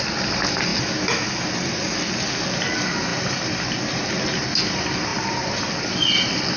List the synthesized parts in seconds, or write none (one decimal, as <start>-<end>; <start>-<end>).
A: none